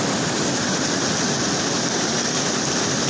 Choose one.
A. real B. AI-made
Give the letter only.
B